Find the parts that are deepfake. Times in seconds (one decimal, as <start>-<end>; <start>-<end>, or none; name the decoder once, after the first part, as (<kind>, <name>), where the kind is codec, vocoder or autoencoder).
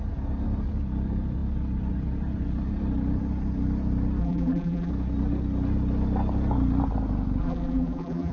4.2-4.9 (vocoder, BigVGAN v2); 7.4-8.3